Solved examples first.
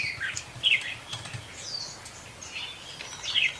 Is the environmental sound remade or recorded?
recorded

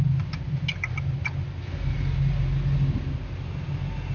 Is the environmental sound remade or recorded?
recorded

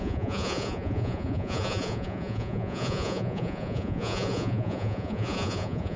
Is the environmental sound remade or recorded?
remade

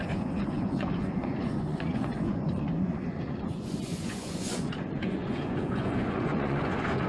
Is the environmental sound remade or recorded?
remade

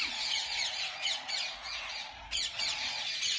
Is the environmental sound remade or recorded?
remade